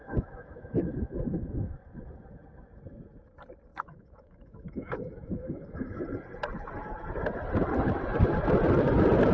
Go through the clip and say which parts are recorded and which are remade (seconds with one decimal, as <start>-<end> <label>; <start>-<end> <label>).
0.0-1.8 remade; 1.8-3.7 recorded; 3.7-6.0 remade; 6.0-9.3 recorded